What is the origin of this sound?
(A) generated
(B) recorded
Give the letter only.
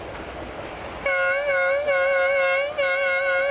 B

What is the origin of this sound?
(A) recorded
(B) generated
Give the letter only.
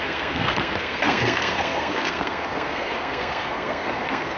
B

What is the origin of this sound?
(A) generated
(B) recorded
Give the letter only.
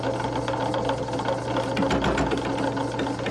B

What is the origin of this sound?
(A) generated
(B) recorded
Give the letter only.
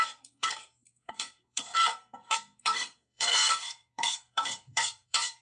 A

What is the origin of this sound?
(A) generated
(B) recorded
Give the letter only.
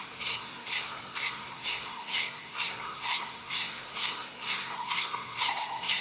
A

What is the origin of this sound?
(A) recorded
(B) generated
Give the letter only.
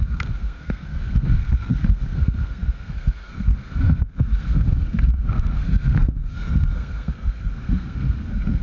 B